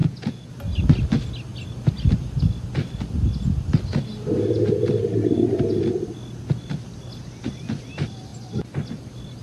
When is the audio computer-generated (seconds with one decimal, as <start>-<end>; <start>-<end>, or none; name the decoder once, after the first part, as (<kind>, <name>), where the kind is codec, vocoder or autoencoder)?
0.0-0.5 (vocoder, Vocos)